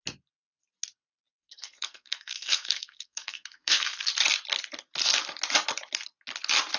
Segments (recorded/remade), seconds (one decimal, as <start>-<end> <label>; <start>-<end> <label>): 0.0-1.4 recorded; 1.4-4.1 remade; 4.1-6.8 recorded